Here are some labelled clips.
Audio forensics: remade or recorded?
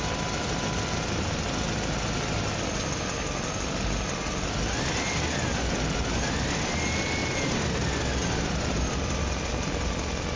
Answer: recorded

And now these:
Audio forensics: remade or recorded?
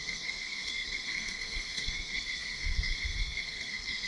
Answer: remade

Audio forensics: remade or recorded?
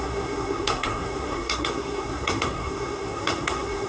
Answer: remade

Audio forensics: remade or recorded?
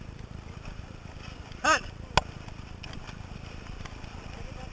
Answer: recorded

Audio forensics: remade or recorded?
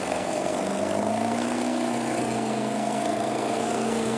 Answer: remade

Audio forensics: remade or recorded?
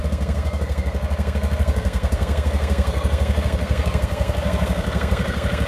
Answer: remade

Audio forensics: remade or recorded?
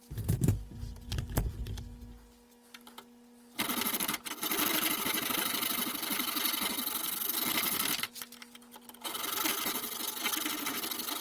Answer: recorded